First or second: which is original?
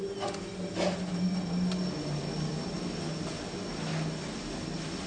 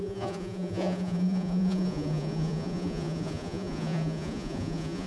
first